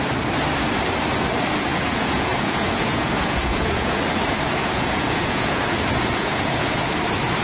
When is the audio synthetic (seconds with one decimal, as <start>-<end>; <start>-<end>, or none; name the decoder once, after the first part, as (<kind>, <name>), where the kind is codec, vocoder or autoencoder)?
1.7-4.0 (vocoder, Vocos); 4.6-6.9